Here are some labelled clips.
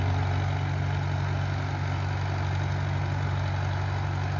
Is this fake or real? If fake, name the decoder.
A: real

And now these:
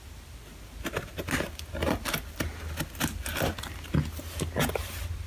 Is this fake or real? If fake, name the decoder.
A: real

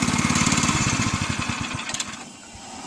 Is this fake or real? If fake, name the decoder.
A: real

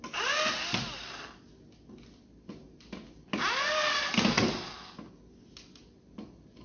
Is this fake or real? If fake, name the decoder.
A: real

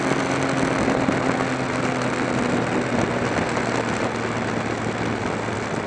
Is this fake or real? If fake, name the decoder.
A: real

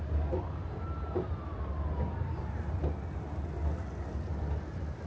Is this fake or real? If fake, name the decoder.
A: real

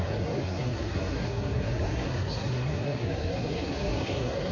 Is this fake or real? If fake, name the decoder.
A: fake, codec, SNAC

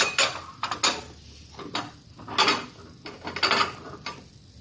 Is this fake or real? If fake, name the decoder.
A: real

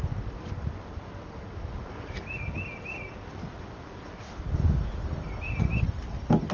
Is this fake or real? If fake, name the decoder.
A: real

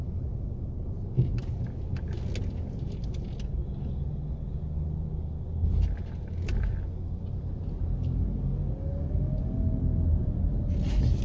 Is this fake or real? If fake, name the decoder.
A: real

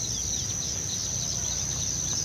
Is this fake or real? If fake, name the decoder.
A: real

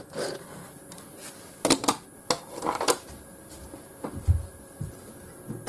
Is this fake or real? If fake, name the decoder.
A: real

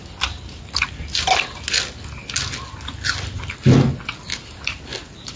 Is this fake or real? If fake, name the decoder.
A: real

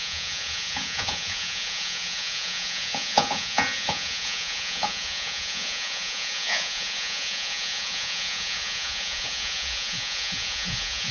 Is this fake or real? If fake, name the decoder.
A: fake, vocoder, Vocos